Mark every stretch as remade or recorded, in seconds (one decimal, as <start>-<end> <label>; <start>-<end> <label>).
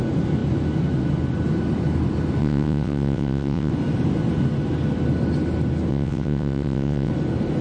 0.0-2.4 recorded; 2.4-3.7 remade; 3.7-5.9 recorded; 5.9-7.1 remade; 7.1-7.6 recorded